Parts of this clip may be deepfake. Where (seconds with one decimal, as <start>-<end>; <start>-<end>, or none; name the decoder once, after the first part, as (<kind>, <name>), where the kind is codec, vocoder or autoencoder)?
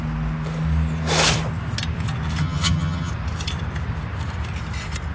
2.4-3.1 (vocoder, HiFi-GAN)